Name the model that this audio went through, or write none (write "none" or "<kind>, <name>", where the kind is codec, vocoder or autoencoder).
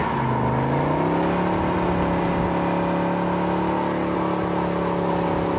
none